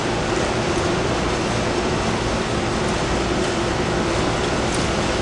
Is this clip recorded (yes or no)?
yes